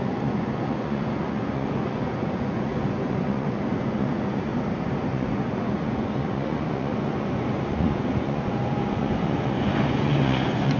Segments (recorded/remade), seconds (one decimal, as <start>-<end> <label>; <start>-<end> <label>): 0.0-4.5 remade; 4.5-5.0 recorded; 5.0-10.8 remade